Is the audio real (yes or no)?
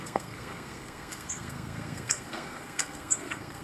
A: no